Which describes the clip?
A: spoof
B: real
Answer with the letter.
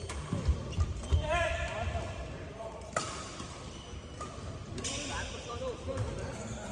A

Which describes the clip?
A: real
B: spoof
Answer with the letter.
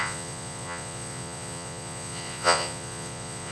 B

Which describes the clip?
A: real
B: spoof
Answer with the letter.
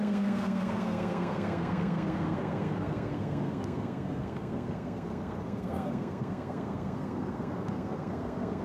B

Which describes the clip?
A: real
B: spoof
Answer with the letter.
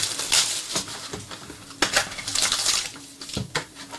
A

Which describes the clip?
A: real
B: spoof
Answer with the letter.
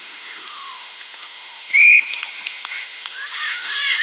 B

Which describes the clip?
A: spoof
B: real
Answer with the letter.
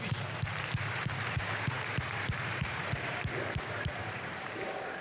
A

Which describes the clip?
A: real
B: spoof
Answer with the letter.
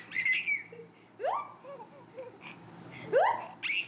A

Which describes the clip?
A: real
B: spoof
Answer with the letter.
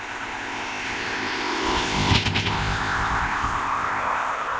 B